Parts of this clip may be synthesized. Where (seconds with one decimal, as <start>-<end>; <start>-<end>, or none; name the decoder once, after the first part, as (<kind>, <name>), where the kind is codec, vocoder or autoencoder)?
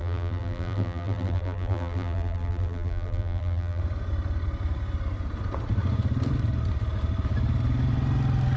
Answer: 0.0-3.8 (vocoder, BigVGAN v2)